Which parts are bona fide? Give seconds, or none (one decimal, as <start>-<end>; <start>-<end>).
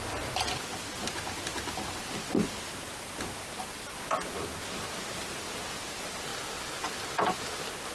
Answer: 0.0-7.9